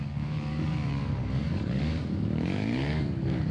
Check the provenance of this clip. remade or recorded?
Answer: remade